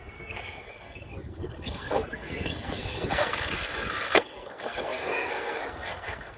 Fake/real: fake